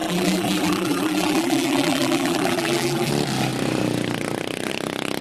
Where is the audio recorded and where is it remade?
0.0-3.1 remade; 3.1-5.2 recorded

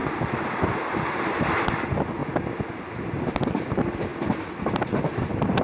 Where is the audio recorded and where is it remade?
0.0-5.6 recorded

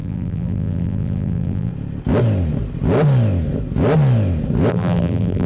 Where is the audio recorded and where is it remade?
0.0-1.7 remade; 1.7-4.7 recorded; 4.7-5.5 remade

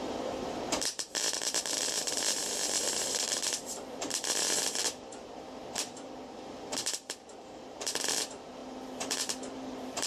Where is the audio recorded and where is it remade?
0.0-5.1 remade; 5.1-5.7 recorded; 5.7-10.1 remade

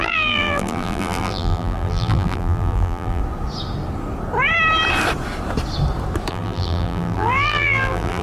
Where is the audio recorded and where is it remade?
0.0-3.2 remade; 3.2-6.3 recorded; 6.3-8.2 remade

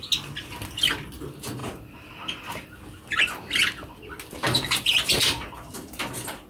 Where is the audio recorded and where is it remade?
0.0-6.5 recorded